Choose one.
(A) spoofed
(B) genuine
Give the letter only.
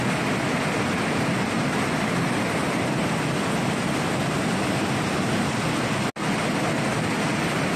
B